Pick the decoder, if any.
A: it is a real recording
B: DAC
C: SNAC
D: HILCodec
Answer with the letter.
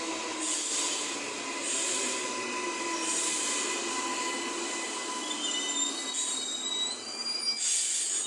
A